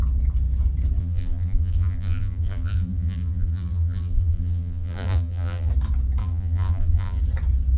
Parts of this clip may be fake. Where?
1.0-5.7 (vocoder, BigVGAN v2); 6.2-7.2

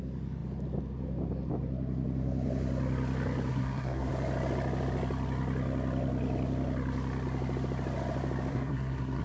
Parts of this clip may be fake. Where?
3.5-4.1 (codec, SNAC); 8.5-9.2